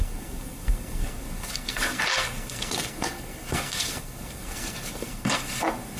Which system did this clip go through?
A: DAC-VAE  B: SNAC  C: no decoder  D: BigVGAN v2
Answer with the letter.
B